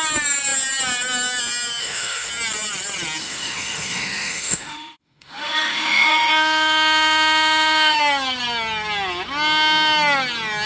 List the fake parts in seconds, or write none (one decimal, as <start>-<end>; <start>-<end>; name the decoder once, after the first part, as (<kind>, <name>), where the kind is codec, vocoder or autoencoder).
1.8-2.3 (autoencoder, DAC-VAE); 3.2-8.0

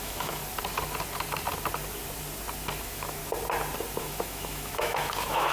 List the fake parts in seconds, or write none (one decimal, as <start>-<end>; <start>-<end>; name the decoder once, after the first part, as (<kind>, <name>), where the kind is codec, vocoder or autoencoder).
0.0-0.4 (autoencoder, DAC-VAE); 2.8-3.2; 4.0-5.5

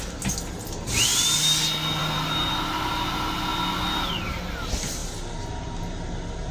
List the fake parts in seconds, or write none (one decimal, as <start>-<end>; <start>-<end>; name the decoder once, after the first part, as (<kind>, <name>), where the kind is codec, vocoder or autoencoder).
none

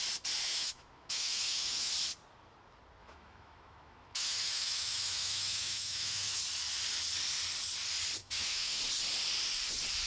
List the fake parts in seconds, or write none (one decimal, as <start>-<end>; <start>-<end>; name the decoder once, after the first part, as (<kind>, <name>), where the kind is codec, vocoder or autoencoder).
0.5-1.9 (autoencoder, DAC-VAE); 3.0-6.4; 8.2-8.8